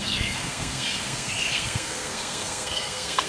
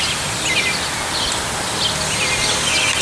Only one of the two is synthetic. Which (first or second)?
first